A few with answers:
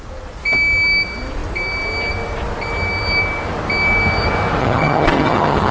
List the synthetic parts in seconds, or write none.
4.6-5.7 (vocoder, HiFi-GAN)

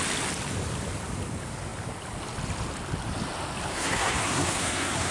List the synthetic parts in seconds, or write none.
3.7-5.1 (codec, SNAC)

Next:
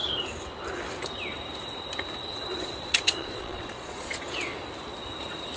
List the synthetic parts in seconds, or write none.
2.8-4.5 (vocoder, Vocos)

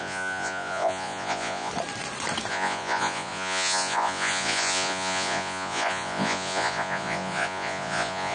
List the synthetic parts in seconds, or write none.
0.0-1.7 (vocoder, Vocos); 2.5-8.3